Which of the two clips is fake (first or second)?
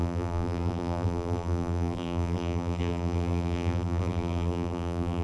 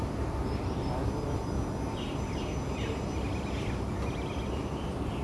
first